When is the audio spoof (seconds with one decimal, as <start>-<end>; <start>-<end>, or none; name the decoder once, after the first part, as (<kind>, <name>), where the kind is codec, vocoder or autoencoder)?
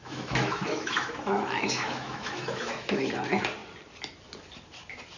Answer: 0.0-3.1 (autoencoder, DAC-VAE)